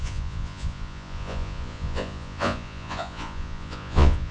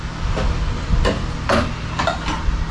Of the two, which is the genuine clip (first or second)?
second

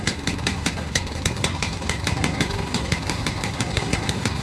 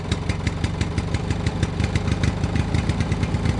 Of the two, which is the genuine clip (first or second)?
second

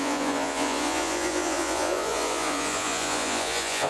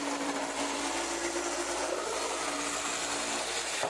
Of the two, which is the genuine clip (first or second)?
second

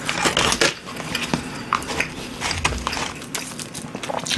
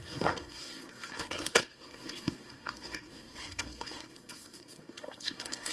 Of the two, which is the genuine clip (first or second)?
first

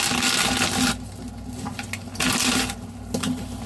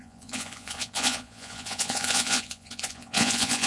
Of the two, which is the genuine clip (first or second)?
first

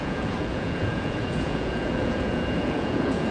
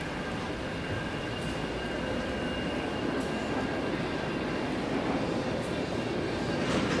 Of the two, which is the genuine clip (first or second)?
second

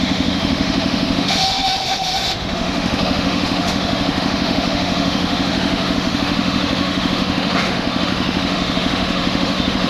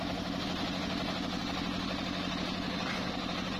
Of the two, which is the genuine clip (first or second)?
second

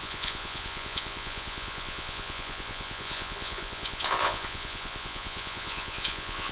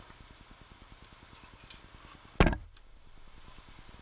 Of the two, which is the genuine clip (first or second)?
second